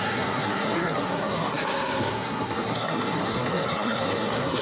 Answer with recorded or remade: remade